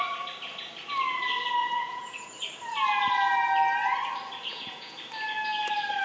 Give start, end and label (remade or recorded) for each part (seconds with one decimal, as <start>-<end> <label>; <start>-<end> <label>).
0.0-1.6 recorded; 1.6-2.3 remade; 2.3-4.5 recorded; 4.5-5.0 remade; 5.0-6.0 recorded